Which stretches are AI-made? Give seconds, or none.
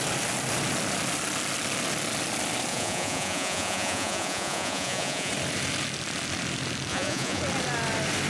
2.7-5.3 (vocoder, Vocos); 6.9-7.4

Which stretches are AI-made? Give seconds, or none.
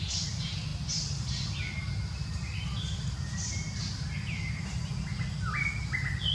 none